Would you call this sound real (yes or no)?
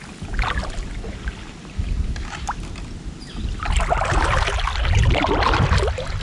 yes